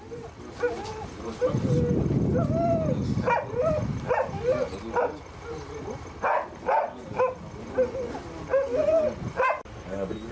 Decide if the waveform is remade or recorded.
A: recorded